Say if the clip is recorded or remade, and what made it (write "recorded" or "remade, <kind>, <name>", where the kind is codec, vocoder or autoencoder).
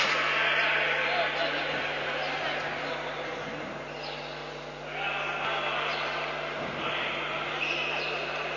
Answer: recorded